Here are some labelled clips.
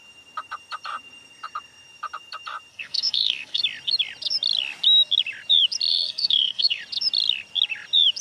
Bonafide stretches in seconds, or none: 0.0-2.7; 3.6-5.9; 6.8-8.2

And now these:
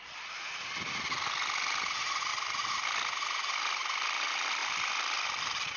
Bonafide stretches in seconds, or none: 0.0-5.8